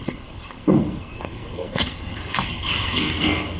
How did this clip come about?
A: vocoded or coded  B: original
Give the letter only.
A